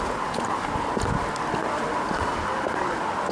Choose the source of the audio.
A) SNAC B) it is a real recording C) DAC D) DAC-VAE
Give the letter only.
B